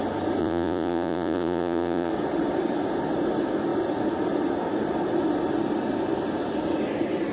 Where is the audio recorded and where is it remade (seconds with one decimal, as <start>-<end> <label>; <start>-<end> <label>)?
0.0-0.4 recorded; 0.4-2.1 remade; 2.1-7.3 recorded